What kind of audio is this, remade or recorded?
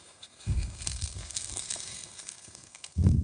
remade